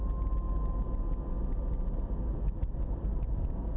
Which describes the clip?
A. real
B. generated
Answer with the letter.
A